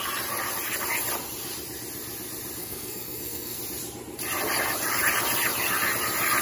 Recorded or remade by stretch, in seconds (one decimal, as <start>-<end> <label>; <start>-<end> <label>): 0.0-2.6 recorded; 2.6-3.6 remade; 3.6-6.4 recorded